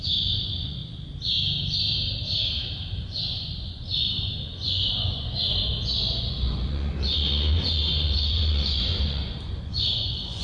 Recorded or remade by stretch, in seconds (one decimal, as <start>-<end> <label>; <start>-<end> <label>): 0.0-0.8 remade; 0.8-3.0 recorded; 3.0-10.4 remade